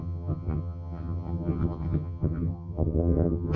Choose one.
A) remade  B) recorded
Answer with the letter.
A